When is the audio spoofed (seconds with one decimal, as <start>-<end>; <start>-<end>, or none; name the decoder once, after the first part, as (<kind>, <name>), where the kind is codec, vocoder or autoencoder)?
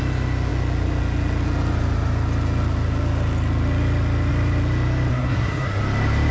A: 5.1-5.8 (codec, SNAC)